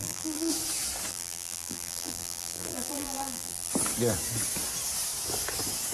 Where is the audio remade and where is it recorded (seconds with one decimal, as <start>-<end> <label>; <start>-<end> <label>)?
0.0-0.5 remade; 0.5-1.1 recorded; 1.1-3.7 remade; 3.7-5.9 recorded